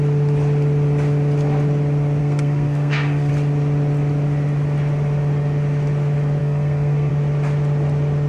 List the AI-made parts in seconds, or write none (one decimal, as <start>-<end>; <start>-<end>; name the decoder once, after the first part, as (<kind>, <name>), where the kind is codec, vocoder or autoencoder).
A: 2.2-3.3 (codec, SNAC); 6.4-7.1